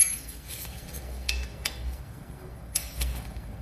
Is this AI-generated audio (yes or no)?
yes